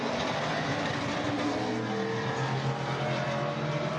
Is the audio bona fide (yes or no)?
yes